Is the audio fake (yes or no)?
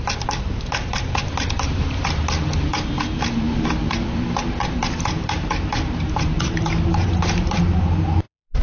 yes